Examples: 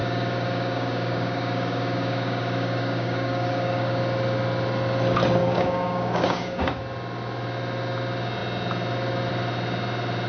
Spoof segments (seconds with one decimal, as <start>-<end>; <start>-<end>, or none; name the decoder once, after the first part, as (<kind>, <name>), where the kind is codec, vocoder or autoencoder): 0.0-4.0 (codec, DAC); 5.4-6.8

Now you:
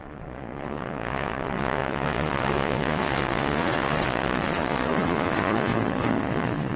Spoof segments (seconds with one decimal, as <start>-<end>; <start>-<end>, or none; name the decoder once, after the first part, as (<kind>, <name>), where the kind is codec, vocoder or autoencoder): 0.0-6.8 (vocoder, Vocos)

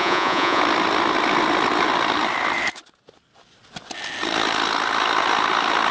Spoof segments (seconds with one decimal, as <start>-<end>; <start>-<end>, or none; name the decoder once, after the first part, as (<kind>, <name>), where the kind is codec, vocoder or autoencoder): 0.0-0.6 (vocoder, Vocos)

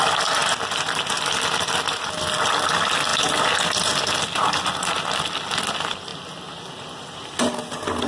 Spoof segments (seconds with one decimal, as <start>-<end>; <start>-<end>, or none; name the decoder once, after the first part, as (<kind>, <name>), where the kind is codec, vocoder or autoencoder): none

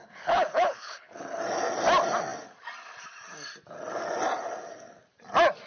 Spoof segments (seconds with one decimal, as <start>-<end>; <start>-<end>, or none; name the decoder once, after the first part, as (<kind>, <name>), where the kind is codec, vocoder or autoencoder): 0.0-1.4 (codec, HILCodec)

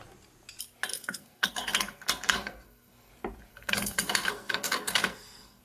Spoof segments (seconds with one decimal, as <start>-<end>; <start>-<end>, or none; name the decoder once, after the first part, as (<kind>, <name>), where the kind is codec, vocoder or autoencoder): 0.9-3.1 (codec, SNAC); 3.5-5.6

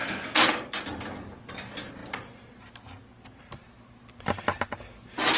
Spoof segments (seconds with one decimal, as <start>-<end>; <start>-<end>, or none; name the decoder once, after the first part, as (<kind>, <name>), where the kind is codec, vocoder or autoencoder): none